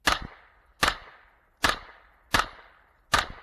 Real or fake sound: real